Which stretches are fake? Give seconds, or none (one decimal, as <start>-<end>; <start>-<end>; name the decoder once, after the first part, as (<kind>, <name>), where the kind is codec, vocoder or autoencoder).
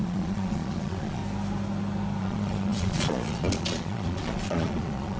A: 0.0-1.2 (vocoder, Vocos); 2.2-5.2